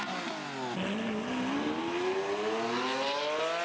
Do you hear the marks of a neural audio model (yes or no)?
no